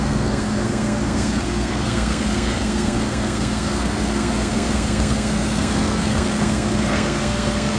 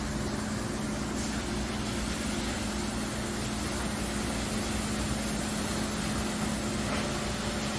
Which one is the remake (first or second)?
first